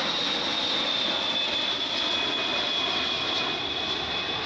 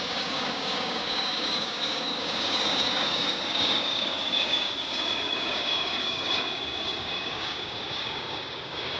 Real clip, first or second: first